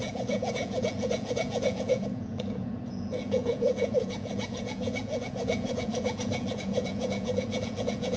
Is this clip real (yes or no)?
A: no